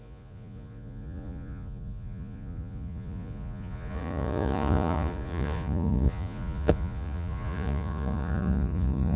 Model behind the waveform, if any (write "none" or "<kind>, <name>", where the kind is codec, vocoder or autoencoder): vocoder, Vocos